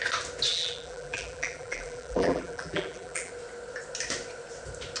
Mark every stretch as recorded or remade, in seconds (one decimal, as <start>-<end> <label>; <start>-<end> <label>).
0.0-0.5 recorded; 0.5-3.3 remade; 3.3-5.0 recorded